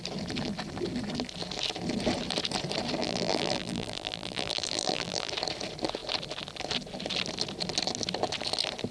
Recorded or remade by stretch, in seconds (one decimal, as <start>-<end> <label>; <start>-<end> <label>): 0.0-3.0 recorded; 3.0-5.3 remade; 5.3-8.9 recorded